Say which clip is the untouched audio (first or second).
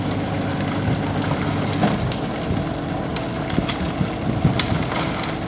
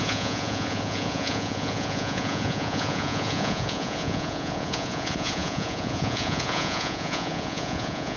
first